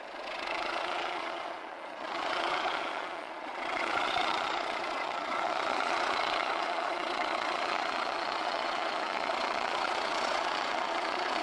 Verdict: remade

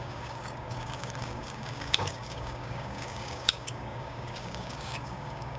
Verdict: remade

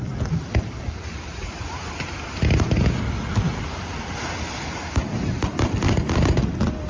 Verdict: recorded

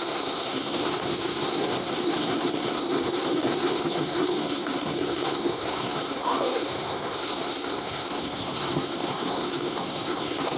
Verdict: remade